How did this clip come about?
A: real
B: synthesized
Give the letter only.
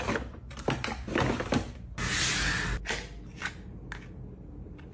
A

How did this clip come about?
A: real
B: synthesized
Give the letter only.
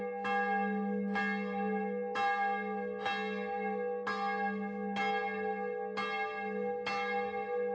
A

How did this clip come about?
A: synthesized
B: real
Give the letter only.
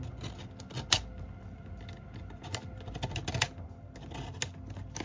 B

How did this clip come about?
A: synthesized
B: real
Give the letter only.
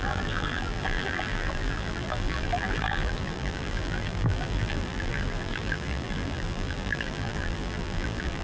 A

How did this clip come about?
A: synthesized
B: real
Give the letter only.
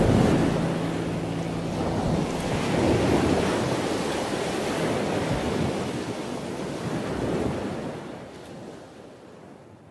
B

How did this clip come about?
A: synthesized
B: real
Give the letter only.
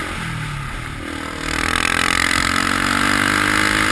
B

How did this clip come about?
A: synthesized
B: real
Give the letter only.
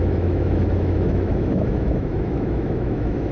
A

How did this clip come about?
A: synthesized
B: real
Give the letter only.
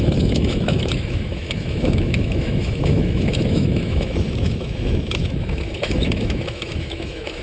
A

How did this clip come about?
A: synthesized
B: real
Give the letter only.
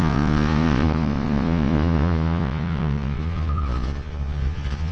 A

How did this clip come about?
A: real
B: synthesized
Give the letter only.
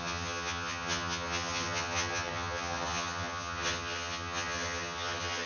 B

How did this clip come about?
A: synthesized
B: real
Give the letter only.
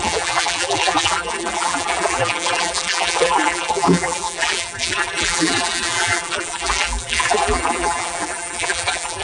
A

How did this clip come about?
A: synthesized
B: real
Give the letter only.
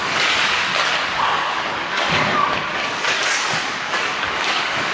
A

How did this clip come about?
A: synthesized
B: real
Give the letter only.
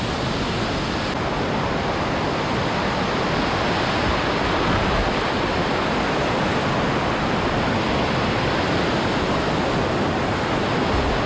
B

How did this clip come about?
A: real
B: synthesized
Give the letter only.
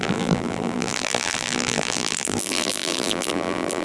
B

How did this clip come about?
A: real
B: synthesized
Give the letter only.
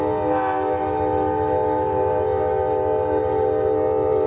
A